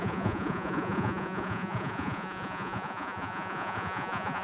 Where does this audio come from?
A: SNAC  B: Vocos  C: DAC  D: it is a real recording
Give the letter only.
B